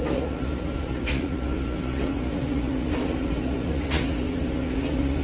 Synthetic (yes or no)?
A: yes